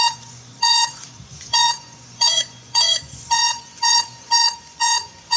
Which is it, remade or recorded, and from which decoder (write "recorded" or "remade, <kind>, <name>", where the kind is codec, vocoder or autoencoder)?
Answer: remade, vocoder, Vocos